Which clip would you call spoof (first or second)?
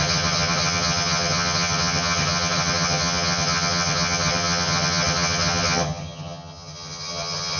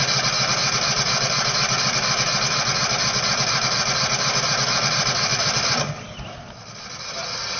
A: first